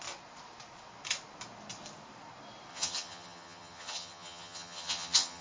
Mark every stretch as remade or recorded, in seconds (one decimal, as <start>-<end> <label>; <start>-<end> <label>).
0.0-2.7 recorded; 2.7-5.4 remade